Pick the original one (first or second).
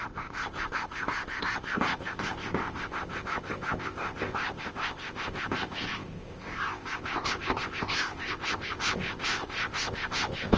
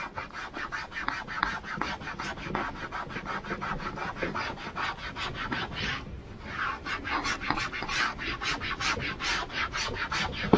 second